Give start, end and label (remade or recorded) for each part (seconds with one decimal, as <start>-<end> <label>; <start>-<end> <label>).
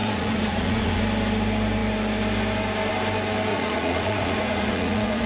0.0-1.0 remade; 1.0-3.5 recorded; 3.5-5.3 remade